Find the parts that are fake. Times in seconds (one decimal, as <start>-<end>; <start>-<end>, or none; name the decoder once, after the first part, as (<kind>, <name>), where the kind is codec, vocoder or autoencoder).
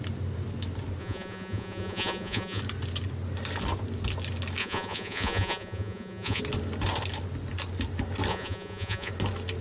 1.0-2.6 (vocoder, Vocos); 4.6-6.4; 8.3-9.1